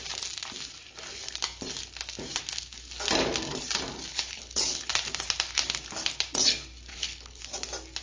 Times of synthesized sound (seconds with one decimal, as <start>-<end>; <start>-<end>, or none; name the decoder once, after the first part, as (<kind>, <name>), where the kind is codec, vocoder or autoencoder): 4.1-4.9 (codec, HILCodec); 6.9-7.4